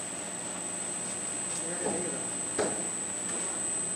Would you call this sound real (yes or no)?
yes